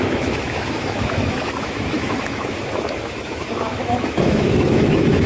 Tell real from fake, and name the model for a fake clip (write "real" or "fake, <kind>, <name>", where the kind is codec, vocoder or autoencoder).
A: fake, autoencoder, DAC-VAE